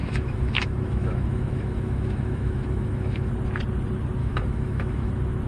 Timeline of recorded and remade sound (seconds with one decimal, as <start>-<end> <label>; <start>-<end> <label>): 0.0-3.3 remade; 3.3-4.2 recorded; 4.2-5.1 remade; 5.1-5.5 recorded